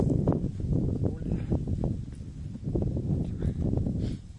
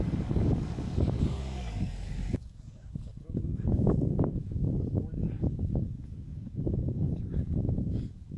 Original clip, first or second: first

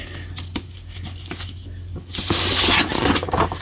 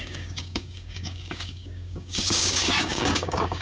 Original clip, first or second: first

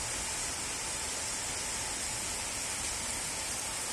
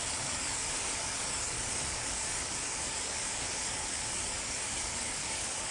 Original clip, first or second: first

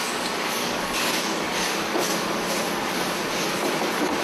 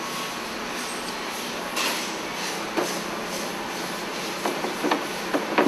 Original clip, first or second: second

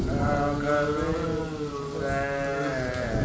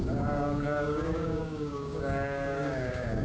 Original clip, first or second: first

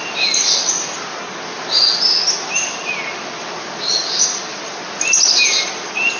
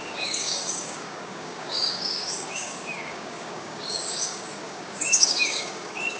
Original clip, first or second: first